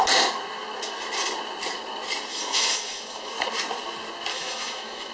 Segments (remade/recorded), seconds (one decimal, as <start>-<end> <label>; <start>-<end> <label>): 0.0-2.3 recorded; 2.3-3.3 remade; 3.3-4.3 recorded; 4.3-5.1 remade